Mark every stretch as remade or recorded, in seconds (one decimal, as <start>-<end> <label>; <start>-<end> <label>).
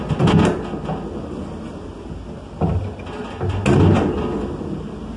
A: 0.0-5.2 recorded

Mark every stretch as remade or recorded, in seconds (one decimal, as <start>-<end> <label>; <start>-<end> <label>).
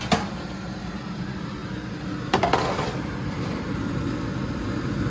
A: 0.0-5.1 recorded